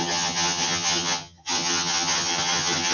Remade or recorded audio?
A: remade